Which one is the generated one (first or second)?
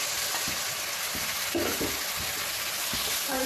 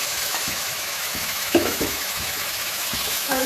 second